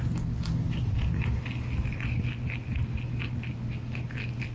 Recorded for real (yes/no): yes